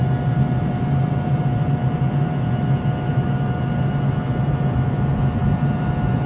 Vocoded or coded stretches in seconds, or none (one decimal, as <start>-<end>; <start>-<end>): none